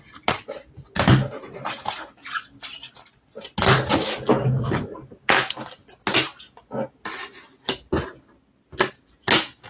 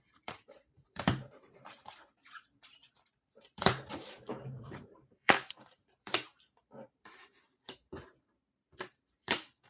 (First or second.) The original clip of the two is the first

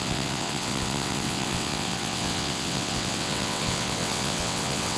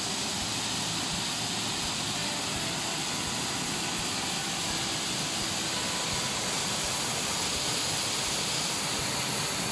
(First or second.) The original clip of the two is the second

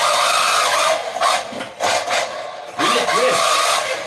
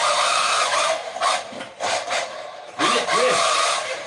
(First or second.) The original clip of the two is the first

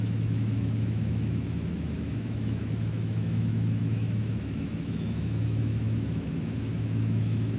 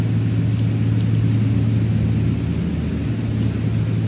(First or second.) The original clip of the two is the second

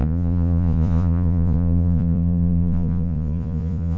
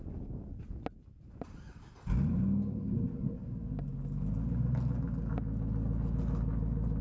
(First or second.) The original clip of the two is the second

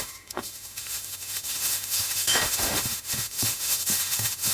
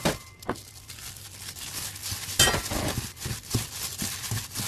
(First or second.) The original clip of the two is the second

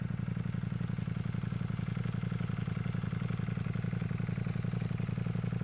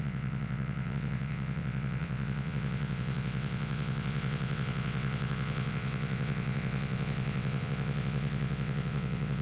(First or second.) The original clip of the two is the first